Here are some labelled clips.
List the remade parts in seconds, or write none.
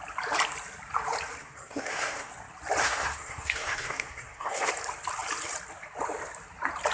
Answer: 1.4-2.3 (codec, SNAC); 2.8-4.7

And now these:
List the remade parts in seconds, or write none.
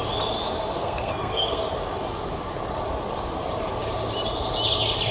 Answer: 0.8-1.6 (codec, SNAC)